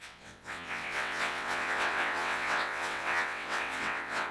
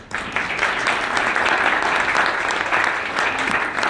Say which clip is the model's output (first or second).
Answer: first